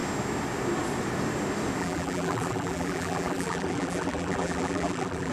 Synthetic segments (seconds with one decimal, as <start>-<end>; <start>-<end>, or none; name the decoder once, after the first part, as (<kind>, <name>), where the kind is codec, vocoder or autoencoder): 1.8-5.3 (vocoder, BigVGAN v2)